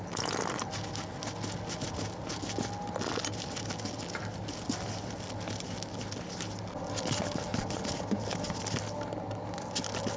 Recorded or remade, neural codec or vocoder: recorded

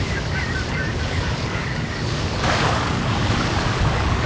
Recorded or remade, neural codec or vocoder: remade, codec, DAC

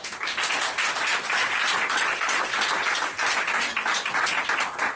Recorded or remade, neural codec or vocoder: recorded